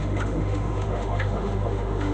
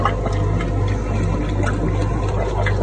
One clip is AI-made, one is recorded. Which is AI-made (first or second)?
first